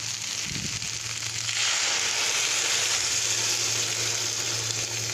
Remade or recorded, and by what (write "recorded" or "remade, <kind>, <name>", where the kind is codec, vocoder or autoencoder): recorded